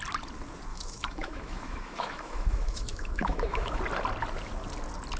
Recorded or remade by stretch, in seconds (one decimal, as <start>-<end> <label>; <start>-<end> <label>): 0.0-0.7 recorded; 0.7-3.8 remade; 3.8-5.2 recorded